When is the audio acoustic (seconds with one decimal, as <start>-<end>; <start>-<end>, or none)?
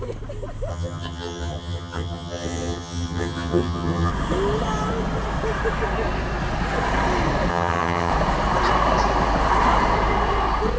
0.0-0.7; 4.1-7.5; 8.1-10.8